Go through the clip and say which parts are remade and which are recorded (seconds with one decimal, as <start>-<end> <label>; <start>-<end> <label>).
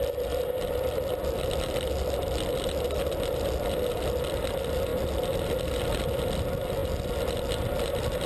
0.0-8.3 recorded